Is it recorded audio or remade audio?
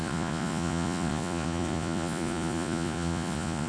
remade